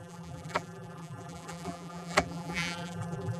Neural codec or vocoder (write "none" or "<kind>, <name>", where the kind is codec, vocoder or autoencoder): vocoder, BigVGAN v2